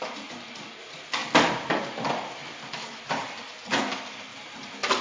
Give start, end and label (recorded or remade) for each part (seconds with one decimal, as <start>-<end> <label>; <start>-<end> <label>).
0.0-1.2 remade; 1.2-1.7 recorded; 1.7-2.4 remade; 2.4-2.9 recorded; 2.9-4.3 remade; 4.3-5.0 recorded